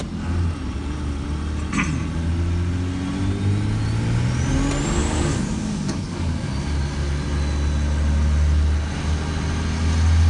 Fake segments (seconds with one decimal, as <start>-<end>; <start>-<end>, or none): 5.0-6.5